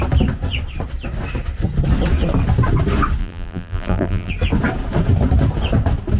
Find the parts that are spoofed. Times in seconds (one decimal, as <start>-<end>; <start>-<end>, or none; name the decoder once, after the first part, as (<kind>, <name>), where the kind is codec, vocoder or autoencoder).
3.2-4.3 (vocoder, BigVGAN v2)